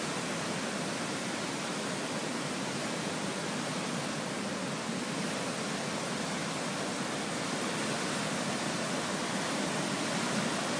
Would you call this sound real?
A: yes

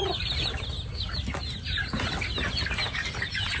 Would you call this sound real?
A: yes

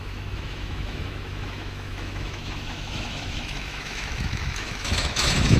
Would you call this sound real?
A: no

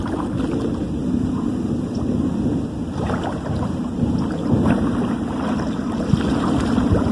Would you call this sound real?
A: yes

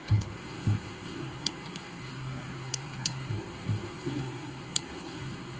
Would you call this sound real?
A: no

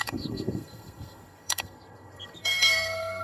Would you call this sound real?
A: no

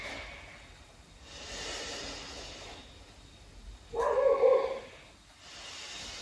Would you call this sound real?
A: yes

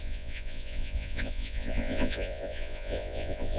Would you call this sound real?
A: no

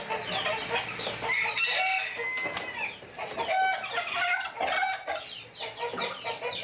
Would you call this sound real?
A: yes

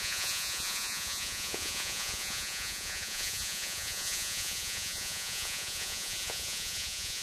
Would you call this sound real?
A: no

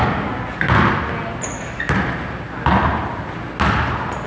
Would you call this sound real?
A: yes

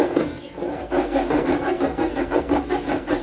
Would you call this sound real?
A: no